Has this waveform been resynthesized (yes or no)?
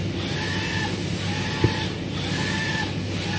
no